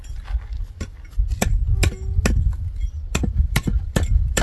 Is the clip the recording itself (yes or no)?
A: yes